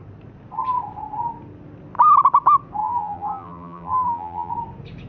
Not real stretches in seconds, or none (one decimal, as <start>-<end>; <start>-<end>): 2.8-4.5